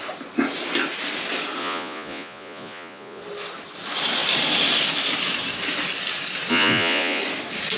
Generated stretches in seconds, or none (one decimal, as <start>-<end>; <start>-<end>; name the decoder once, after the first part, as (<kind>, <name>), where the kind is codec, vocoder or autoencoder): 1.6-3.2 (vocoder, Vocos); 6.5-7.2